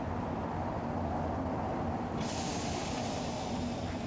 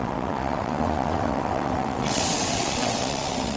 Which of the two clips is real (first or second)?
first